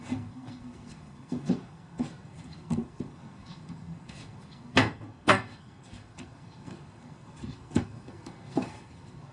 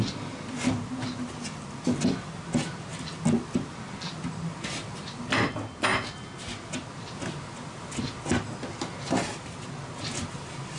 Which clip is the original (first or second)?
second